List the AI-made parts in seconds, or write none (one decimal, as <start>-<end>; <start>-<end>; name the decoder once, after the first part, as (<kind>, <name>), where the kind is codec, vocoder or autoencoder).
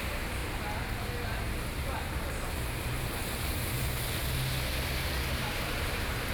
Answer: 0.0-4.2 (vocoder, BigVGAN v2); 5.6-6.3